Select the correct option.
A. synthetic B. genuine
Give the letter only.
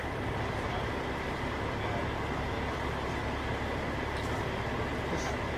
B